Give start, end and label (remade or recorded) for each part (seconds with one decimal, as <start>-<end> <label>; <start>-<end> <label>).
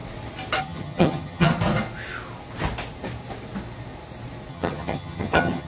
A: 0.0-0.6 recorded; 0.6-1.5 remade; 1.5-4.5 recorded; 4.5-5.7 remade